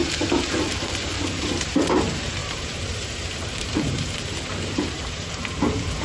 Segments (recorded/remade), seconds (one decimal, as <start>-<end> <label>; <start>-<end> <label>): 0.0-6.0 remade